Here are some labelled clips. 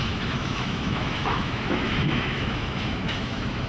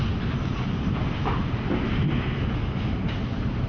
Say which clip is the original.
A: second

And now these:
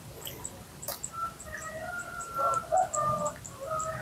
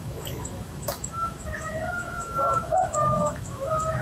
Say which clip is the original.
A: first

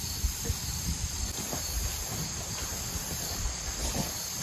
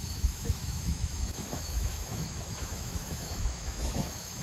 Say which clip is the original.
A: first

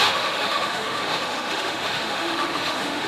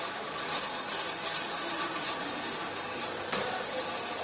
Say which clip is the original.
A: second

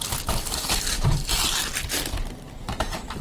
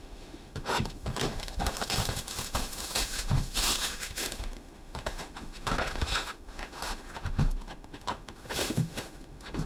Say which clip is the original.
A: first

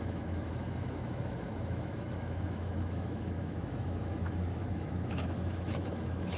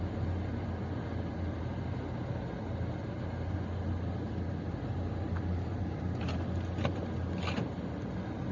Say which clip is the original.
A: second